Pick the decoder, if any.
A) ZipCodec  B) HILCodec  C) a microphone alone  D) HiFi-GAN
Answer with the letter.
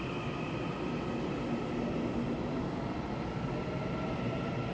C